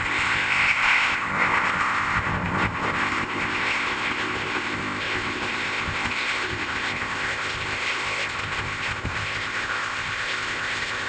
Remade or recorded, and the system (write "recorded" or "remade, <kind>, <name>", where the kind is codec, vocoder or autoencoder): remade, codec, ZipCodec